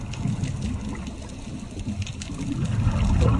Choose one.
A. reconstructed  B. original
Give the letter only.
B